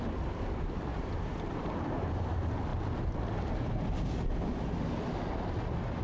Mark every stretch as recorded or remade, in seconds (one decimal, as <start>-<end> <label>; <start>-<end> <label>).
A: 0.0-6.0 recorded